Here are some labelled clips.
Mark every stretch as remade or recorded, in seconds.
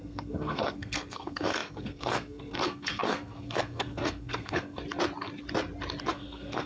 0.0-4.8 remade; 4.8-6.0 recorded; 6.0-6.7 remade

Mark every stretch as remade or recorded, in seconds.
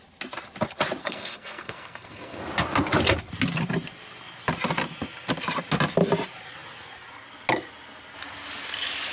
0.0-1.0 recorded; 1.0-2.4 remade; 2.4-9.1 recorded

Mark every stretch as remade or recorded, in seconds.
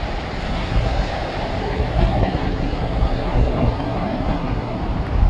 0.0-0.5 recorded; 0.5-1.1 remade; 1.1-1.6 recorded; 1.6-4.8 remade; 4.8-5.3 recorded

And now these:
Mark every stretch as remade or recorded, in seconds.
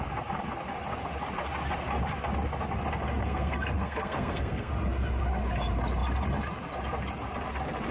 0.0-3.2 recorded; 3.2-4.7 remade; 4.7-7.9 recorded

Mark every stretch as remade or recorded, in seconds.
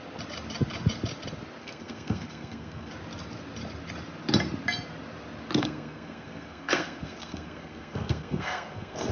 0.0-1.6 recorded; 1.6-2.9 remade; 2.9-5.6 recorded; 5.6-9.1 remade